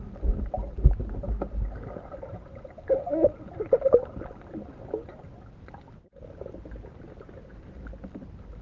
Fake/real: real